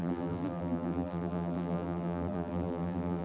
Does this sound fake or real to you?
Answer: fake